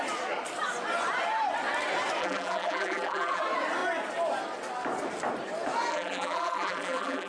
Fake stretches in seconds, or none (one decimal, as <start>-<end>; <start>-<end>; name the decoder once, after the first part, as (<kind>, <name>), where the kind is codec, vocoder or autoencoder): 2.2-3.4 (vocoder, BigVGAN v2); 5.9-7.3